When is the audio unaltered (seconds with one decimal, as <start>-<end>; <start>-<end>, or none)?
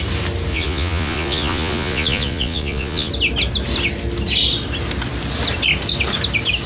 0.0-0.5; 3.1-6.7